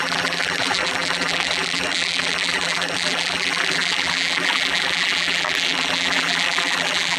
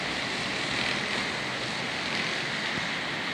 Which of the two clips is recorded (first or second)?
second